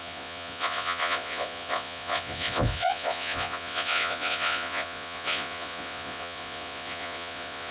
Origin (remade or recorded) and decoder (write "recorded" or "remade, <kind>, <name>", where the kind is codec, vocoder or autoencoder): remade, vocoder, Vocos